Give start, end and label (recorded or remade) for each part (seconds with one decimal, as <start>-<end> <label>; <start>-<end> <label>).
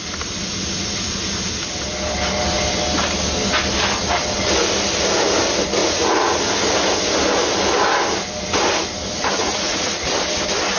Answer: 0.0-5.8 recorded; 5.8-6.4 remade; 6.4-9.4 recorded; 9.4-10.1 remade; 10.1-10.8 recorded